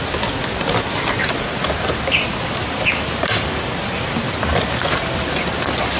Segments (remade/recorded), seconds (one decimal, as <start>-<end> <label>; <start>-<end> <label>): 0.0-2.6 recorded; 2.6-3.8 remade; 3.8-6.0 recorded